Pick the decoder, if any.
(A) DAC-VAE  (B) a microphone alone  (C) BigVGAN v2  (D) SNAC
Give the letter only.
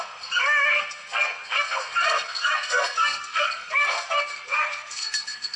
D